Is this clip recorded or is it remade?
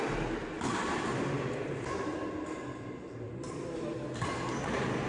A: recorded